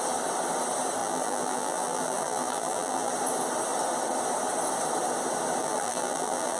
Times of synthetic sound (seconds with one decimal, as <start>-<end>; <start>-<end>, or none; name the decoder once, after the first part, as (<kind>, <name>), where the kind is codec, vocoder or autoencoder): 1.0-3.1 (vocoder, BigVGAN v2); 5.6-6.6